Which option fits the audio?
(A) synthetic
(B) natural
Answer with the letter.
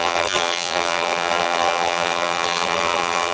A